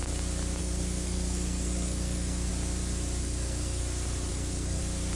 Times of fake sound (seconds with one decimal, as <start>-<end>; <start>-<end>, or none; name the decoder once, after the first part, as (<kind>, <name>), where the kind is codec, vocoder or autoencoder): 0.6-2.5 (codec, SNAC); 3.2-3.8; 4.3-4.8